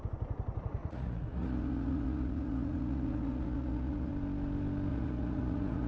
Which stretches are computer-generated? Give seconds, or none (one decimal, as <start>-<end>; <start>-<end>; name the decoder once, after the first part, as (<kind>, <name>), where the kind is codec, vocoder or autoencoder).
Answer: 0.8-4.1 (vocoder, Vocos); 4.9-5.9